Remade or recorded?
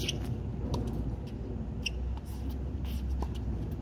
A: recorded